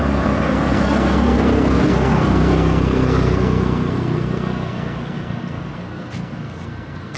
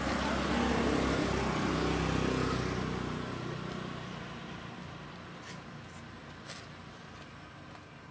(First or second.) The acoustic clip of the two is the second